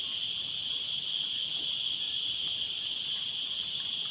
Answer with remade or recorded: recorded